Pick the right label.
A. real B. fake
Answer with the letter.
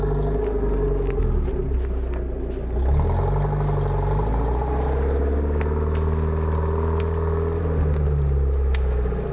A